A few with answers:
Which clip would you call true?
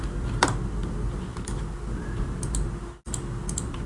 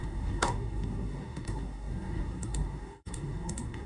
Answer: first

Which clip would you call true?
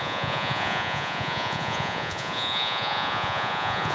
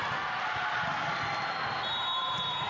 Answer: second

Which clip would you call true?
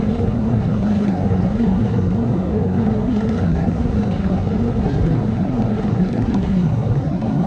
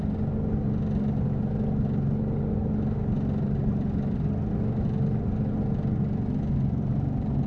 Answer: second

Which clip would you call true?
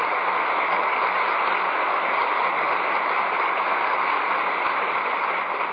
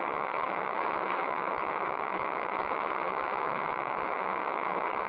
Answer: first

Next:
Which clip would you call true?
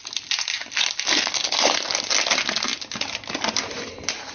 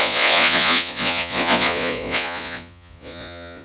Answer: first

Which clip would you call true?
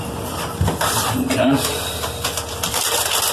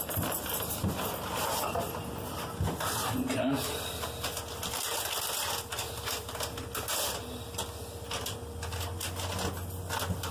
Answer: second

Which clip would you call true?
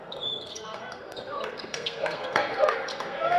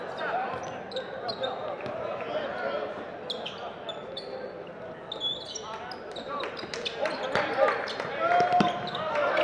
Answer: second